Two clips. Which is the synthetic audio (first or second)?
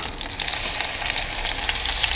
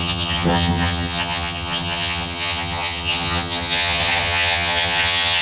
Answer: second